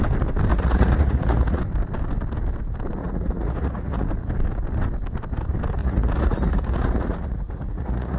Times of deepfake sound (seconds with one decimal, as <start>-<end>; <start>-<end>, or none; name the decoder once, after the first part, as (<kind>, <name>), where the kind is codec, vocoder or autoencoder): 0.5-1.6 (vocoder, Vocos); 3.0-4.1; 5.8-8.2